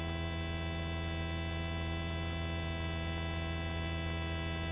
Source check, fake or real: real